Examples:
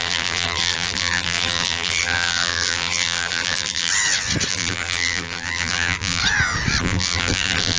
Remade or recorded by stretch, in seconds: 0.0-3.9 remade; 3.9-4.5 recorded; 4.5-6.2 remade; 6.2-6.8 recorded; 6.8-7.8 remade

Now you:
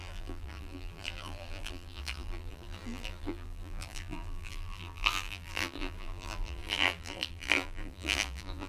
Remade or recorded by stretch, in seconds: 0.0-8.7 remade